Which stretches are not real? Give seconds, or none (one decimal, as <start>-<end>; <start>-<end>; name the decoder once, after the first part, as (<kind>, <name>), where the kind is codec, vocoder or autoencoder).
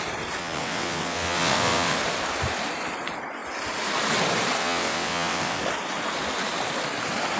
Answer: 0.4-2.0 (vocoder, WaveNeXt); 4.6-5.6